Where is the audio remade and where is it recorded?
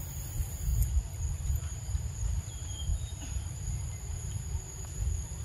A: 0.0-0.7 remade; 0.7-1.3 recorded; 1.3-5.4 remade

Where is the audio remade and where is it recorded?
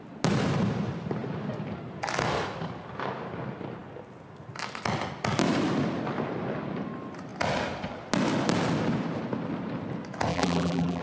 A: 0.0-10.3 recorded; 10.3-11.0 remade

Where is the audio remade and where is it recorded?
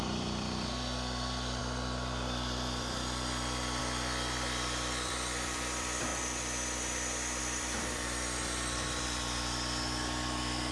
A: 0.0-6.1 remade; 6.1-7.4 recorded; 7.4-10.7 remade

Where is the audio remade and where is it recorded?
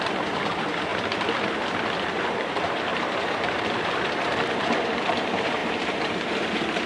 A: 0.0-0.9 remade; 0.9-2.1 recorded; 2.1-6.9 remade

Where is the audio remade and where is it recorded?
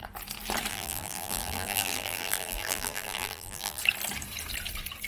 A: 0.0-0.7 recorded; 0.7-3.8 remade; 3.8-5.1 recorded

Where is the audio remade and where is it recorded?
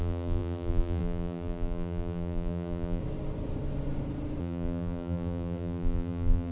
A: 0.0-3.0 remade; 3.0-4.4 recorded; 4.4-6.5 remade